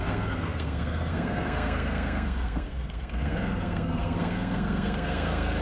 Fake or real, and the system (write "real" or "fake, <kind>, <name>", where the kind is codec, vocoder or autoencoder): fake, codec, SNAC